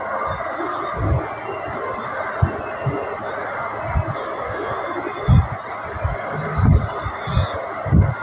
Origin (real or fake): real